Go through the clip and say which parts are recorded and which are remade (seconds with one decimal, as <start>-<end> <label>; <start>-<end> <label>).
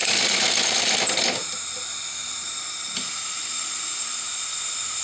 0.0-5.0 recorded